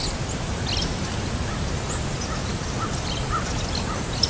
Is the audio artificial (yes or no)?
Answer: no